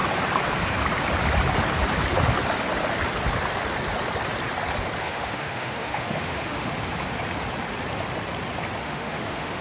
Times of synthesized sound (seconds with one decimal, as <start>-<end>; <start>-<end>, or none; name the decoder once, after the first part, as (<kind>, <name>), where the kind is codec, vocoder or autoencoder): 5.0-6.7 (autoencoder, DAC-VAE); 8.8-9.6

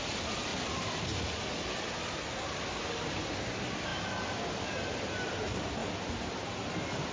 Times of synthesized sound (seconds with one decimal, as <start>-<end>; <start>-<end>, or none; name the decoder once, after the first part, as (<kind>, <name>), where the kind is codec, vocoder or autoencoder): none

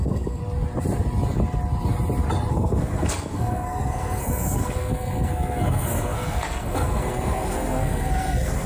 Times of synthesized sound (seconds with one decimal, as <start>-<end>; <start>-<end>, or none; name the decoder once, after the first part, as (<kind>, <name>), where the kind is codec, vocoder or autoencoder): 0.0-0.4 (codec, SNAC); 2.5-8.7

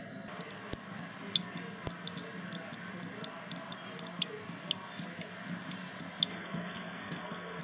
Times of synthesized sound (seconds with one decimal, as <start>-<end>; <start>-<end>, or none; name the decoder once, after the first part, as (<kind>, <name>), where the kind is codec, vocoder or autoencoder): 6.3-7.6 (codec, SNAC)

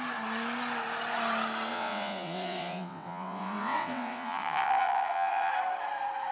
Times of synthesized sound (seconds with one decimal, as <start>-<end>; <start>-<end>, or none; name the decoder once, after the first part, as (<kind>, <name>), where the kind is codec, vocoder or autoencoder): 1.7-5.5 (vocoder, WaveNeXt)

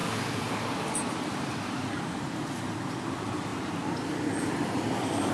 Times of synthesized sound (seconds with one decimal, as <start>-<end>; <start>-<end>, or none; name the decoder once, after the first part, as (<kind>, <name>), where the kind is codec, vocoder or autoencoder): 0.0-3.5 (vocoder, BigVGAN v2); 4.1-5.3

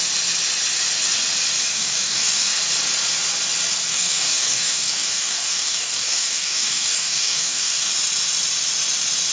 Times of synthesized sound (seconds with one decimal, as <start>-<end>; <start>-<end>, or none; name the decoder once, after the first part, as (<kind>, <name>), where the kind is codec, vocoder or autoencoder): 1.7-2.6 (codec, DAC); 3.9-7.9